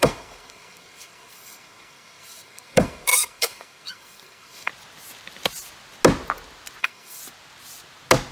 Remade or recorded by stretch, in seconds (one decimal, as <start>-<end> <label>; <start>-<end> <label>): 0.0-4.7 remade; 4.7-6.8 recorded; 6.8-7.2 remade; 7.2-8.3 recorded